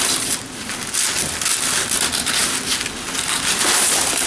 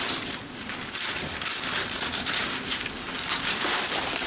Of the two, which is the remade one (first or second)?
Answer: second